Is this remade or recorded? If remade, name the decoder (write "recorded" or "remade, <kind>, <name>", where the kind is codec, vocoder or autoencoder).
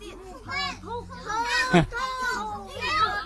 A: recorded